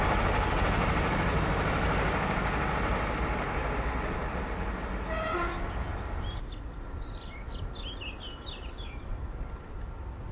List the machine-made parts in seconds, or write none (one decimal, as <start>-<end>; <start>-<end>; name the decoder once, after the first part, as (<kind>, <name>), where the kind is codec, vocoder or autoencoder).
none